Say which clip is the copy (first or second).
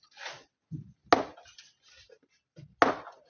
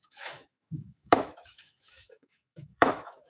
second